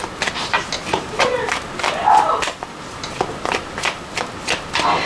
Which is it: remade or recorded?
recorded